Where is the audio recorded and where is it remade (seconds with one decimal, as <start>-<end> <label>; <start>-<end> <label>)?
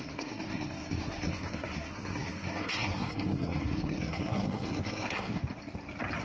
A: 0.0-5.4 remade; 5.4-6.2 recorded